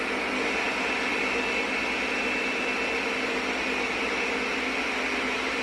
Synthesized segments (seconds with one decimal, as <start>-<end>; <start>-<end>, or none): none